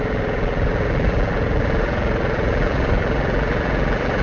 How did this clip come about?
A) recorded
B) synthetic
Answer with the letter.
B